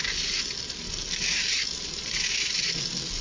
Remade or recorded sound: recorded